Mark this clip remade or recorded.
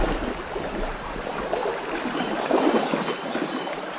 recorded